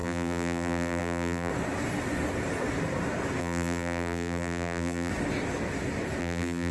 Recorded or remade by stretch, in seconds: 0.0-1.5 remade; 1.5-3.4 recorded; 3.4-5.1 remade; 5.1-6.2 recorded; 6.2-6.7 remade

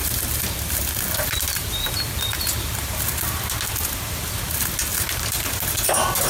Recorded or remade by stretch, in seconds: 0.0-3.4 remade; 3.4-4.9 recorded; 4.9-5.5 remade; 5.5-6.3 recorded

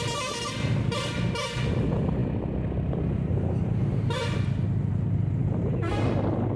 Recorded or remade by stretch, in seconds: 0.0-6.6 recorded

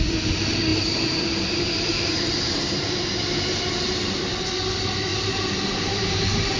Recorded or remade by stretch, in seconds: 0.0-0.7 recorded; 0.7-4.2 remade; 4.2-5.1 recorded; 5.1-6.6 remade

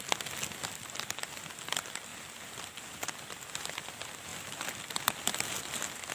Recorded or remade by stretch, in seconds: 0.0-6.1 recorded

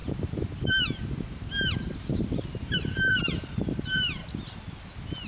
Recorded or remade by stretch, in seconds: 0.0-4.2 remade; 4.2-5.3 recorded

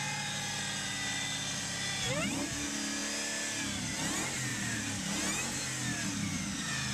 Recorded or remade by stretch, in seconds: 0.0-4.5 recorded; 4.5-5.1 remade; 5.1-6.9 recorded